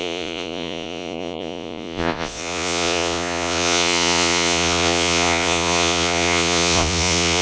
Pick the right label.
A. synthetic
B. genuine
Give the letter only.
A